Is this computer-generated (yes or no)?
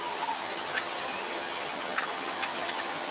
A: yes